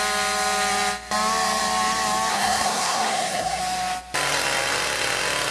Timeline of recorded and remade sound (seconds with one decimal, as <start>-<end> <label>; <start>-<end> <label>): 0.0-2.3 recorded; 2.3-3.6 remade; 3.6-5.5 recorded